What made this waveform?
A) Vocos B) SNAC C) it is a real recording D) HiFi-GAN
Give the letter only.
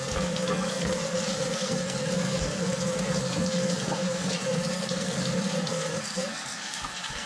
B